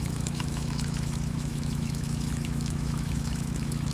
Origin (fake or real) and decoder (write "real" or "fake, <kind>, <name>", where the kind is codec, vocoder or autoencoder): fake, autoencoder, DAC-VAE